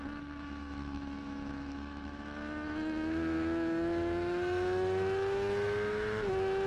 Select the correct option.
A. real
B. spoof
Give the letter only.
B